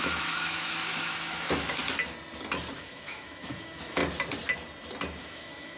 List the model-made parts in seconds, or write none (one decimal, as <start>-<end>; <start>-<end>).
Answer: 0.0-1.8; 2.8-4.0; 5.2-5.8